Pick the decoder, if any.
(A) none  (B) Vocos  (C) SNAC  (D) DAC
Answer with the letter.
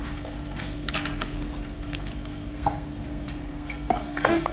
C